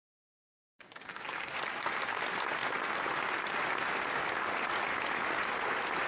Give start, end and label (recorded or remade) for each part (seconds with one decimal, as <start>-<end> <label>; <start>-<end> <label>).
0.0-0.7 recorded; 0.7-1.6 remade; 1.6-6.1 recorded